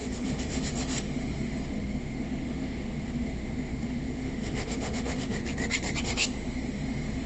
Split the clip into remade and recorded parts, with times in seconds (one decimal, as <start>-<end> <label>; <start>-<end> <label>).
0.0-5.4 remade; 5.4-6.0 recorded; 6.0-7.3 remade